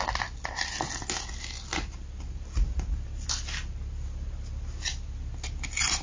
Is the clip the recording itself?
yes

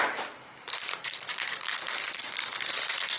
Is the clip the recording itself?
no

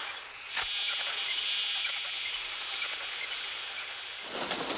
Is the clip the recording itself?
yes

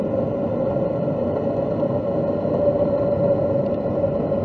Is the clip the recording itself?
yes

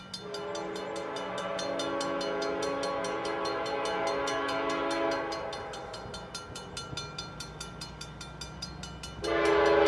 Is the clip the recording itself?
yes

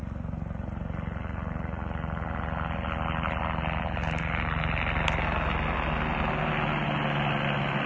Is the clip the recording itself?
yes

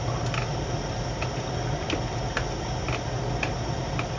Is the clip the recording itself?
yes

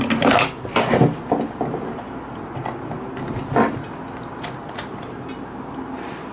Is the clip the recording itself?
yes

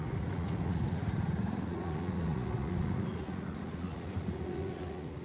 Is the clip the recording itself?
no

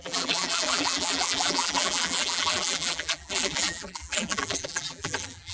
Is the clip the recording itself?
no